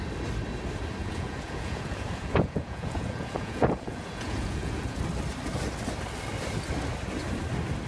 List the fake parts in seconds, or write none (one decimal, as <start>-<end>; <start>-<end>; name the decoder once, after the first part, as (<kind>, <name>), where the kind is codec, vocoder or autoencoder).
1.0-5.0 (vocoder, Vocos)